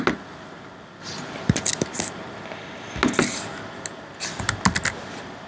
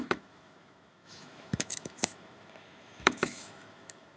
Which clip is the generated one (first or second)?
second